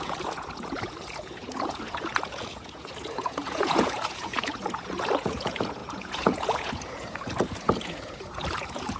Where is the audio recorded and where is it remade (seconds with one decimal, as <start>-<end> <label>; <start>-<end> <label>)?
0.0-9.0 remade

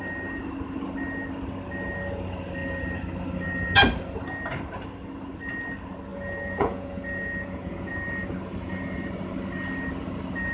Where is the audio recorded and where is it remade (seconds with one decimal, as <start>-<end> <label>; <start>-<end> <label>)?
0.0-6.1 recorded; 6.1-7.9 remade; 7.9-10.5 recorded